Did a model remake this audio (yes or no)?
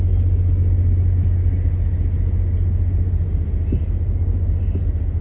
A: no